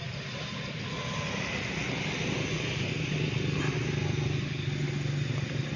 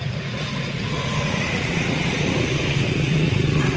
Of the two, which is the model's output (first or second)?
second